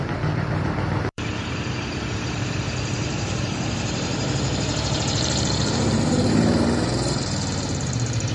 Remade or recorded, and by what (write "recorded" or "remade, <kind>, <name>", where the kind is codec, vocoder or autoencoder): remade, vocoder, BigVGAN v2